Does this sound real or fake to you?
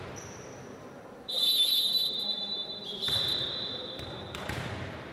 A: fake